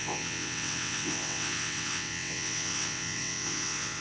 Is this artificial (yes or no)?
yes